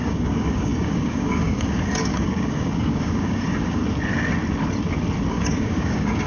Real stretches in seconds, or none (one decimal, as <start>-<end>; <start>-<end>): 3.8-5.3